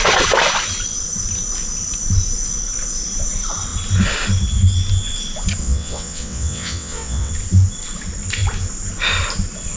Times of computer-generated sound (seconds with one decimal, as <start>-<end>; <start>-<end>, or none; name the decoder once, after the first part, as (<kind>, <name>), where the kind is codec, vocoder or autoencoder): 5.6-7.3 (vocoder, WaveNeXt)